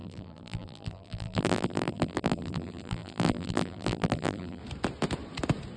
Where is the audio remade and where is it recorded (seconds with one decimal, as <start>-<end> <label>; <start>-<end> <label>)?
0.0-4.6 remade; 4.6-5.8 recorded